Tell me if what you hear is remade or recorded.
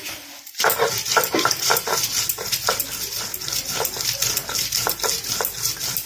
recorded